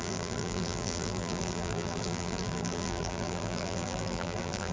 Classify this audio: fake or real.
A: fake